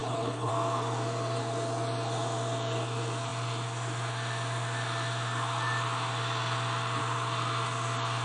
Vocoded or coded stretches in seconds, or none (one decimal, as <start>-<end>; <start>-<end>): 0.0-0.5